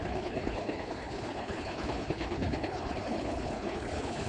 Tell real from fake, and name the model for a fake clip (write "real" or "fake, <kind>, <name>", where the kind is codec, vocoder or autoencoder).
fake, codec, HILCodec